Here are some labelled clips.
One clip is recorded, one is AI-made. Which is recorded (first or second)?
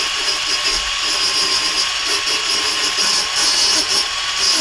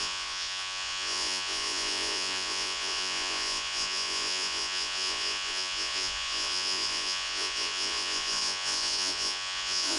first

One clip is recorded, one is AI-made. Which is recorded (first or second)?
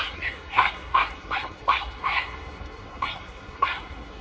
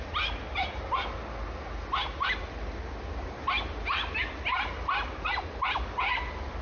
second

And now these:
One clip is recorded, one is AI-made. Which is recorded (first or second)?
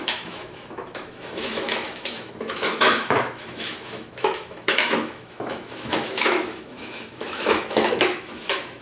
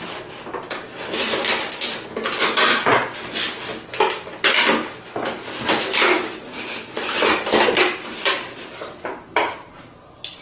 second